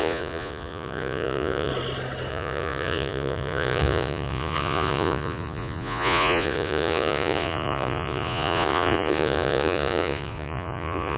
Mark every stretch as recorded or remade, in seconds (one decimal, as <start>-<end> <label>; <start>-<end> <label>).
0.0-1.7 remade; 1.7-2.3 recorded; 2.3-11.2 remade